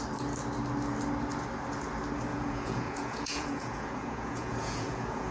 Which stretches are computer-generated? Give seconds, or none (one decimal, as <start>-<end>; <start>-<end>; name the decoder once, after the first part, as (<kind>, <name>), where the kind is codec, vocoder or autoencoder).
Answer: 2.3-5.3 (vocoder, Vocos)